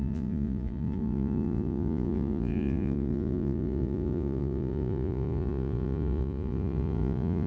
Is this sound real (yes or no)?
no